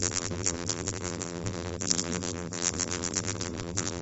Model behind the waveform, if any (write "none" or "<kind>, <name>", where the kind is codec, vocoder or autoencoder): vocoder, BigVGAN v2